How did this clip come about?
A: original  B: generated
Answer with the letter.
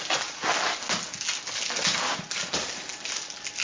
A